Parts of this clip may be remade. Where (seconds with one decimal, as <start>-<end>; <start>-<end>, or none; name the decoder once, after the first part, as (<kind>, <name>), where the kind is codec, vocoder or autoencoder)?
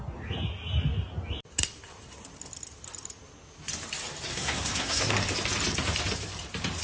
4.3-5.1 (codec, SNAC)